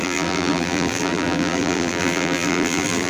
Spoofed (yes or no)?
yes